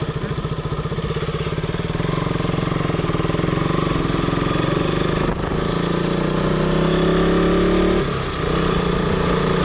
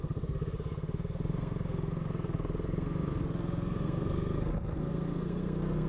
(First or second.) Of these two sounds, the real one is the first